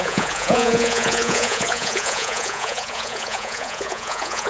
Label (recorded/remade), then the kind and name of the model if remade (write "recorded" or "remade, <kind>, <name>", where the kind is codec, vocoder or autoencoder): remade, vocoder, Vocos